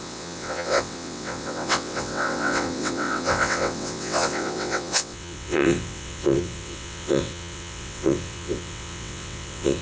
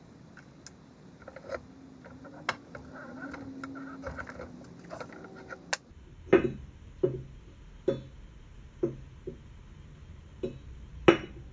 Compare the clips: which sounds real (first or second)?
second